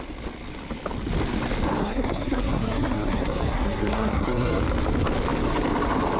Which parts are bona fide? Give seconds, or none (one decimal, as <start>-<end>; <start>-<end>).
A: 0.0-1.8; 4.6-6.2